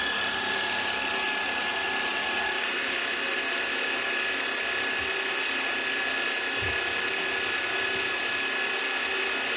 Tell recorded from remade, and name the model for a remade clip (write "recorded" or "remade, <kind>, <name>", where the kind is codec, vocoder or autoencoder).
recorded